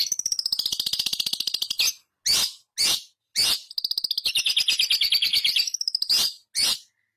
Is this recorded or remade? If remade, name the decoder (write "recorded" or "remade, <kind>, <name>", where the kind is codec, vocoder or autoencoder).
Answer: recorded